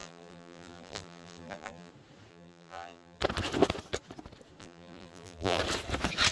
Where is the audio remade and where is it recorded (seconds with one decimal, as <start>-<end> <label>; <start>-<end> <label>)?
0.0-1.9 remade; 1.9-2.3 recorded; 2.3-3.2 remade; 3.2-4.6 recorded; 4.6-5.6 remade; 5.6-6.3 recorded